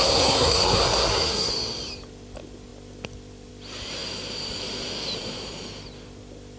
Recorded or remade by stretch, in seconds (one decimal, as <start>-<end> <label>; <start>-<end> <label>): 0.0-1.5 remade; 1.5-6.6 recorded

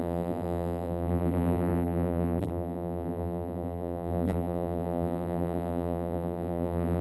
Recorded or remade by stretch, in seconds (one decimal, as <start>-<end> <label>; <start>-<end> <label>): 0.0-7.0 remade